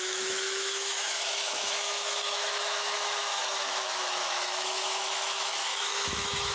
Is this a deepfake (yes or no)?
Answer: yes